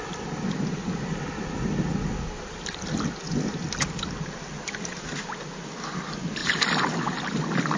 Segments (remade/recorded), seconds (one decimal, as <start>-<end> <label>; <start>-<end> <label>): 0.0-7.8 recorded